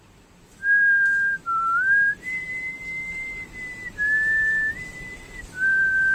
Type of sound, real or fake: real